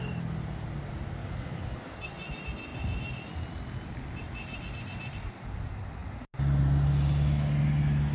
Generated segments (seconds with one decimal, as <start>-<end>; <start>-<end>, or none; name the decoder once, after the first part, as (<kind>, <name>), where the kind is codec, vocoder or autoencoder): none